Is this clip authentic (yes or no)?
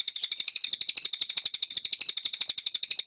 yes